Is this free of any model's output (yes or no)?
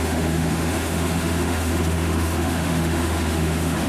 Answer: no